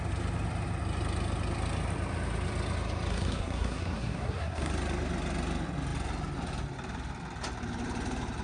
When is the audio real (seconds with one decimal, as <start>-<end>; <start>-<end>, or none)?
0.0-3.1; 4.7-8.4